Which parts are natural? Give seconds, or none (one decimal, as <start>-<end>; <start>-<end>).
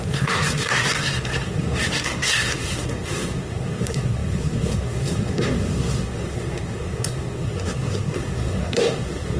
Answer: none